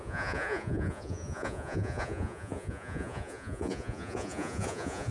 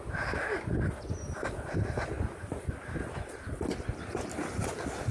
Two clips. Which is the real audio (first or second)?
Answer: second